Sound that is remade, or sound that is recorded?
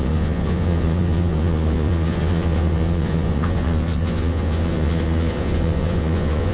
remade